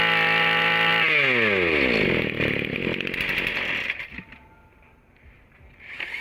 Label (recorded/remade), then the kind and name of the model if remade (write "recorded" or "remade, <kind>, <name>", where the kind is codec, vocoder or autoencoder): recorded